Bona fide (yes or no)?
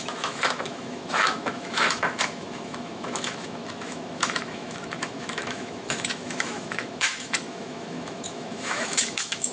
no